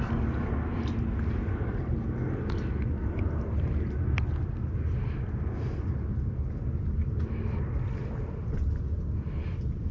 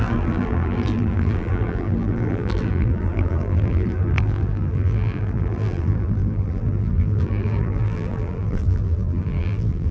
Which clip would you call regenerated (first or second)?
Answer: second